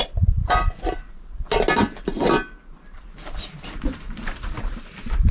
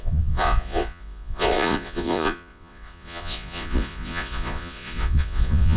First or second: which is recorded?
first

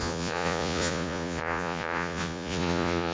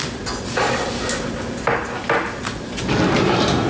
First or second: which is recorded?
second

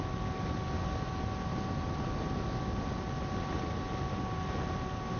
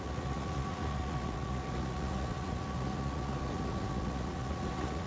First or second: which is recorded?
first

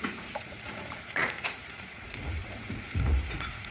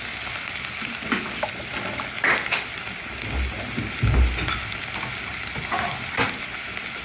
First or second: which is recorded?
second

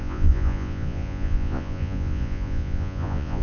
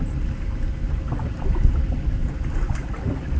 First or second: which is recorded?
second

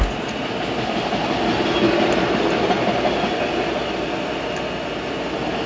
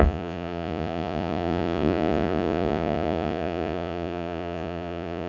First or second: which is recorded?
first